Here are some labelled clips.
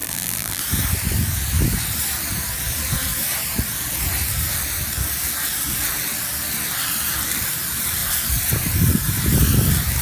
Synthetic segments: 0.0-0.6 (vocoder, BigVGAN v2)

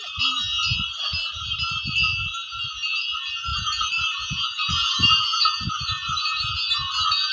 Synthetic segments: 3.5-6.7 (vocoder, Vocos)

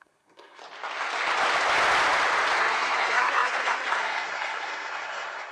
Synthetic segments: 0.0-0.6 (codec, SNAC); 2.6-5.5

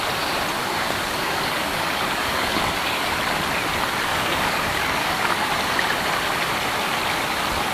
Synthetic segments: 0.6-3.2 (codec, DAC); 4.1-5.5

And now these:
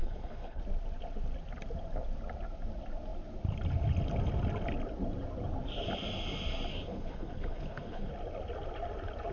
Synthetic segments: 0.0-0.6 (codec, HILCodec); 6.7-8.1

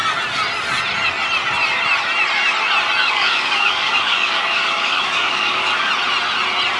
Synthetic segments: 3.0-5.9 (codec, DAC)

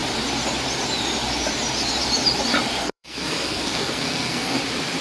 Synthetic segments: 2.8-4.6 (codec, SNAC)

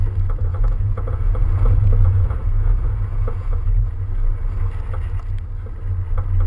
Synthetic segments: 0.5-4.1 (vocoder, Vocos)